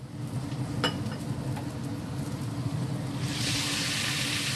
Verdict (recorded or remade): recorded